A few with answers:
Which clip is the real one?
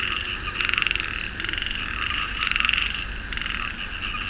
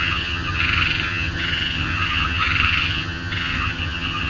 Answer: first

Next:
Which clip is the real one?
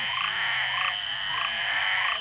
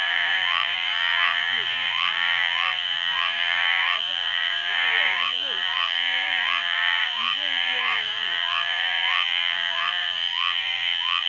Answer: first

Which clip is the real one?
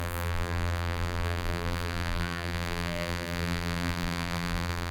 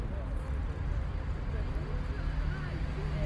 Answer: second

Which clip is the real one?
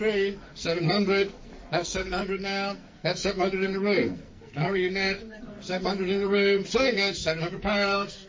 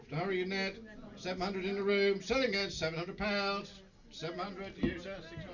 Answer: second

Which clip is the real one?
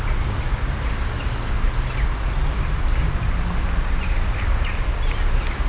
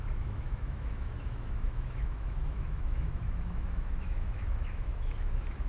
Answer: first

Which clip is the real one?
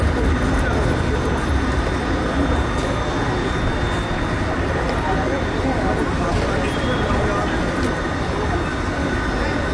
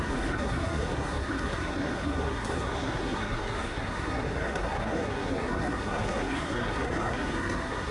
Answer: first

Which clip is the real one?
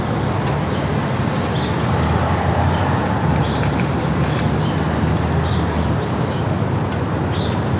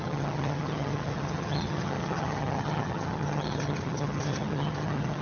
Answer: first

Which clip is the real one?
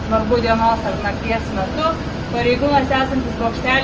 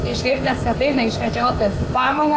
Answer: first